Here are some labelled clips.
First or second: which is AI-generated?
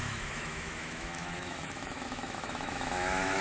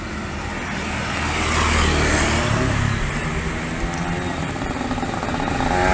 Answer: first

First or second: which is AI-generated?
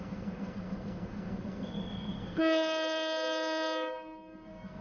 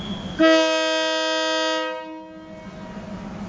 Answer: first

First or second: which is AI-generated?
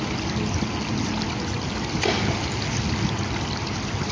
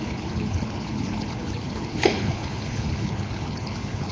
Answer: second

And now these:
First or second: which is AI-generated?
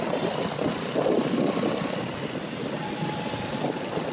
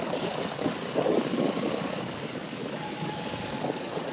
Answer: second